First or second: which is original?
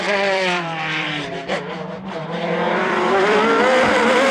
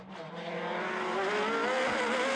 second